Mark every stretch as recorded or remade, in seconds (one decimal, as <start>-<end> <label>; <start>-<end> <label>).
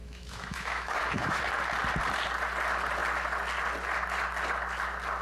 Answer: 0.0-1.4 remade; 1.4-5.2 recorded